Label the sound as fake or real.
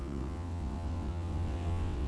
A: fake